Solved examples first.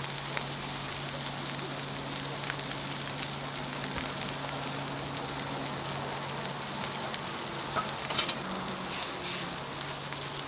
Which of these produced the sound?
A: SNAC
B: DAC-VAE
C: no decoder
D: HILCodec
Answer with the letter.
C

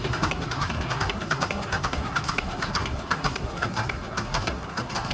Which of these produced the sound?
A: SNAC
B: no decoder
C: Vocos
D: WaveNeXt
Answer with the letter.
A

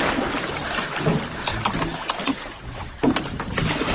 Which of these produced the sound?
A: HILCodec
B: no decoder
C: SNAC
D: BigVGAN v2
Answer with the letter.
B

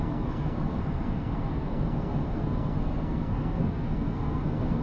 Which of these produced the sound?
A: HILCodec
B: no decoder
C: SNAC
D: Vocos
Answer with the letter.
C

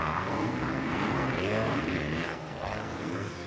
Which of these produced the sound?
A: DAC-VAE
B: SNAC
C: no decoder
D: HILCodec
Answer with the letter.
B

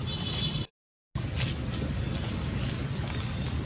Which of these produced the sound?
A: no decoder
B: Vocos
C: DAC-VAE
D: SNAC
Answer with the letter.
A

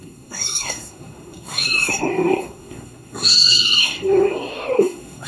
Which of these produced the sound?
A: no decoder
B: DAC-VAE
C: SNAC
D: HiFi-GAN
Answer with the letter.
C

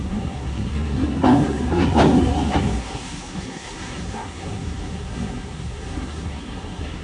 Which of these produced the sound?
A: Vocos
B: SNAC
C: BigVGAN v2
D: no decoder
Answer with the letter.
B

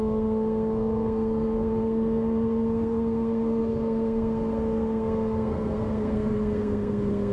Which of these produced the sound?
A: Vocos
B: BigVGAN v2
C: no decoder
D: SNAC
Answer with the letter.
D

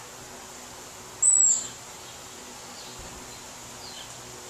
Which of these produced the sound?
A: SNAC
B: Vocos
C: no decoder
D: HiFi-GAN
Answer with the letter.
C